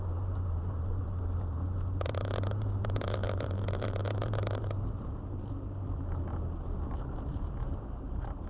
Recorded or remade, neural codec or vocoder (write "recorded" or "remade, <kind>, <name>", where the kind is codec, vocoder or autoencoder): remade, vocoder, BigVGAN v2